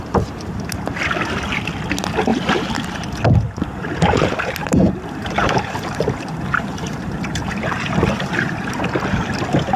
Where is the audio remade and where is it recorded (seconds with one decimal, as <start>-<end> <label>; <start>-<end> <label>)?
0.0-4.6 recorded; 4.6-8.9 remade; 8.9-9.8 recorded